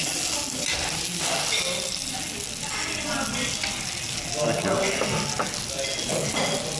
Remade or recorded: recorded